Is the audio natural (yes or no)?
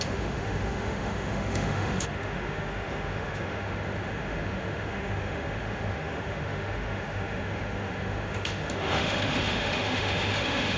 no